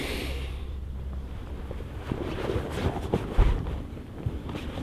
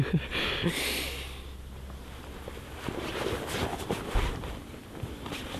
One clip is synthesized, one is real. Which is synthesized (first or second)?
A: first